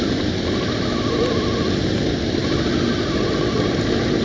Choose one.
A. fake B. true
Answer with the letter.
B